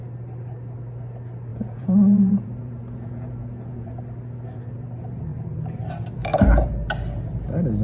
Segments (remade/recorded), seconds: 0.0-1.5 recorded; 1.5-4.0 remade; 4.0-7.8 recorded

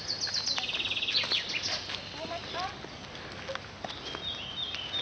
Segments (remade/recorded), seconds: 0.0-5.0 recorded